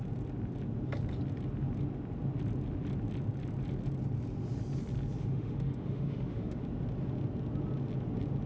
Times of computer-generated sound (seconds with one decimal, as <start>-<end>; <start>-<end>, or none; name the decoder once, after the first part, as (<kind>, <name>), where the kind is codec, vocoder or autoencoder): 5.2-6.6 (autoencoder, DAC-VAE)